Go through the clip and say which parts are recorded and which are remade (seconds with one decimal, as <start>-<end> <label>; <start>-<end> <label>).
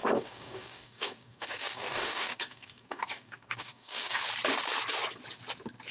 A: 0.0-4.2 remade; 4.2-5.9 recorded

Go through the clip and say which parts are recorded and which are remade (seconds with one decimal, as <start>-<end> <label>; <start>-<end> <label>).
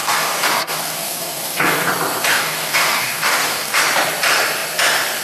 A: 0.0-1.9 remade; 1.9-2.3 recorded; 2.3-3.8 remade; 3.8-5.2 recorded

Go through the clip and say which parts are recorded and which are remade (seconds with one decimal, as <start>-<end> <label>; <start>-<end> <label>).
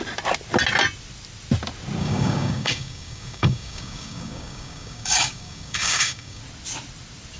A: 0.0-2.0 recorded; 2.0-6.4 remade; 6.4-7.4 recorded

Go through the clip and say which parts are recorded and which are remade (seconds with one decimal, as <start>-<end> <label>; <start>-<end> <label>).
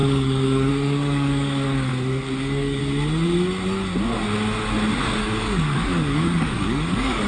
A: 0.0-1.9 remade; 1.9-2.4 recorded; 2.4-2.8 remade; 2.8-5.2 recorded; 5.2-7.3 remade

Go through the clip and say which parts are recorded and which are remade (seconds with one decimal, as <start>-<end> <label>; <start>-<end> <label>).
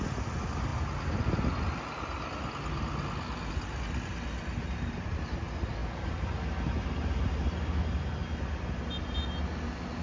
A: 0.0-10.0 recorded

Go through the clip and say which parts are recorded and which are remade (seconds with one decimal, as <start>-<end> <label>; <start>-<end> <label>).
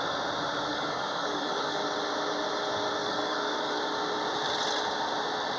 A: 0.0-0.7 recorded; 0.7-1.8 remade; 1.8-3.0 recorded; 3.0-3.8 remade; 3.8-5.6 recorded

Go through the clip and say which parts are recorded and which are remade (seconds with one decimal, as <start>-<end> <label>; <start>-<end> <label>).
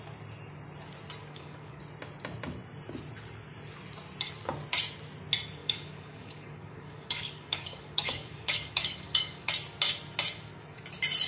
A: 0.0-1.2 recorded; 1.2-1.8 remade; 1.8-5.6 recorded; 5.6-9.5 remade; 9.5-11.3 recorded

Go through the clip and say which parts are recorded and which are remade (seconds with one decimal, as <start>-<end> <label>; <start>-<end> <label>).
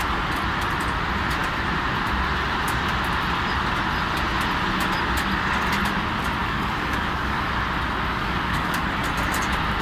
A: 0.0-6.4 recorded; 6.4-7.5 remade; 7.5-8.1 recorded; 8.1-8.8 remade; 8.8-9.8 recorded